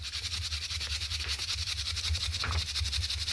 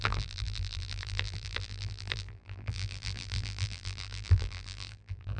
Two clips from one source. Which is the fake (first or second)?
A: second